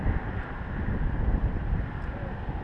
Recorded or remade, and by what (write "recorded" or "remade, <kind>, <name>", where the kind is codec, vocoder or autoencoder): recorded